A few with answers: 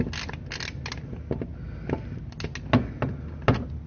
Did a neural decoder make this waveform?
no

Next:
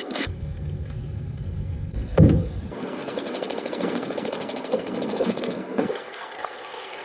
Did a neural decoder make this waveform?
yes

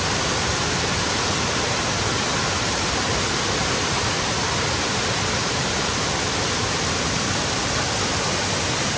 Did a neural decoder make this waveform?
no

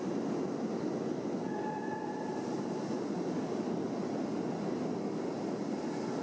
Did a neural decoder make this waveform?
no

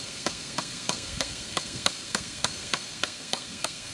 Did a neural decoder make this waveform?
yes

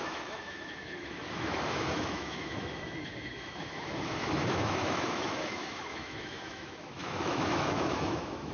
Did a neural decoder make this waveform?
yes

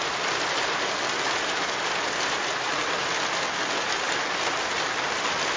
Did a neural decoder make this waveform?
no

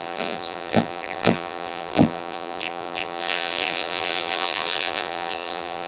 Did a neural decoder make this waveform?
yes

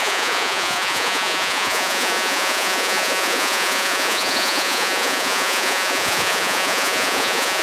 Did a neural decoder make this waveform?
yes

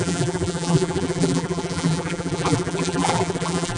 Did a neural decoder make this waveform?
yes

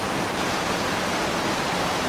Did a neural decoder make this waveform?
no